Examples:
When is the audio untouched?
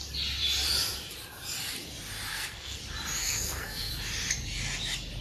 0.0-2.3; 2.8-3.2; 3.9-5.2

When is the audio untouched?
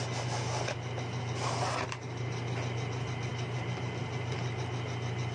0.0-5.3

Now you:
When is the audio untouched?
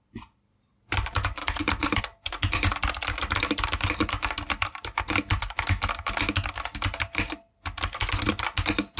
0.0-9.0